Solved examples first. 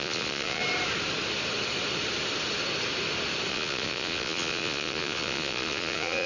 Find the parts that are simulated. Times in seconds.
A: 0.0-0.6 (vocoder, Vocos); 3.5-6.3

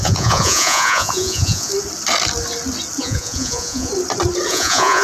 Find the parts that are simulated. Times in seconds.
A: 0.0-1.7 (vocoder, Vocos); 3.0-3.9; 4.5-5.0

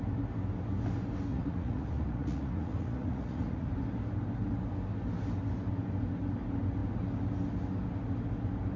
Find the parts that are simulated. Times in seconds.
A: 1.3-3.7 (vocoder, Vocos)